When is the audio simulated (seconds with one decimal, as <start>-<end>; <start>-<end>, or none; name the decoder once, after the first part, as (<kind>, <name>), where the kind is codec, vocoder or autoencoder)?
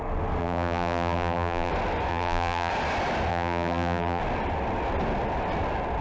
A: 0.4-1.7 (vocoder, BigVGAN v2); 2.1-2.7; 3.3-4.2